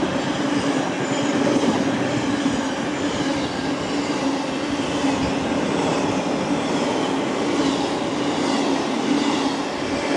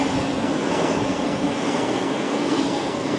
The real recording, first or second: first